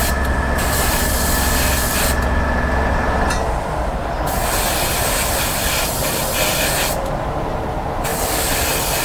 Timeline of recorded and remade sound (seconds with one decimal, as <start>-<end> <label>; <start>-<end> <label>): 0.0-9.0 recorded